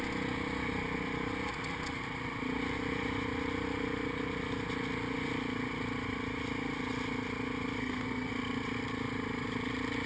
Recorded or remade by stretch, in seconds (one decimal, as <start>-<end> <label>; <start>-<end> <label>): 0.0-7.8 recorded; 7.8-8.3 remade; 8.3-10.1 recorded